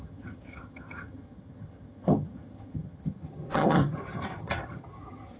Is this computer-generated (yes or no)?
yes